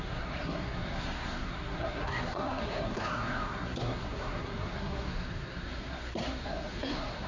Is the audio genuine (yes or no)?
no